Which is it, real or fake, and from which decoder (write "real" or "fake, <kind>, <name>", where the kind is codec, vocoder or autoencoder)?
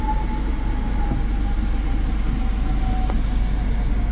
real